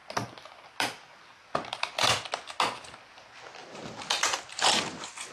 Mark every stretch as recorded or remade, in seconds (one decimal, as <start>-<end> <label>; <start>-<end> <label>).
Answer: 0.0-5.3 recorded